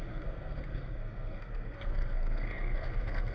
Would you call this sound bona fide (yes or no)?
no